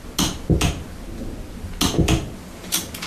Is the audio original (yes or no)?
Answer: yes